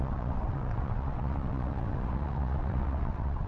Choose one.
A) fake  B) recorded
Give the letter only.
A